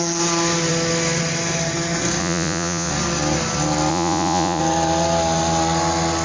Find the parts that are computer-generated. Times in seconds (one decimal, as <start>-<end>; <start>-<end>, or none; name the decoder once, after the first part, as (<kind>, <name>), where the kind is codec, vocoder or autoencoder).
2.2-2.9 (vocoder, Vocos); 3.9-4.6

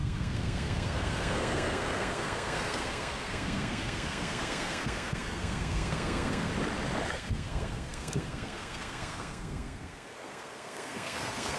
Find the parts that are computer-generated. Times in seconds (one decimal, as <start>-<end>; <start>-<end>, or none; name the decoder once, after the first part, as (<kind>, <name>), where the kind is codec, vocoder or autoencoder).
0.0-6.5 (codec, SNAC); 7.1-11.6

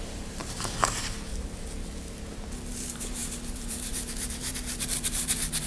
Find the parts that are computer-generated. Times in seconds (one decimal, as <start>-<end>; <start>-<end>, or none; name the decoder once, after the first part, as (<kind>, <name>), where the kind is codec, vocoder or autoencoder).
0.0-0.4 (vocoder, BigVGAN v2); 2.7-5.7

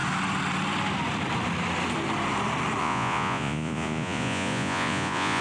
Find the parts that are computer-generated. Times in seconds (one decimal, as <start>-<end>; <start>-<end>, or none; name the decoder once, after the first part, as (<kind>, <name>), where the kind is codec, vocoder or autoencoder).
2.8-5.4 (vocoder, Vocos)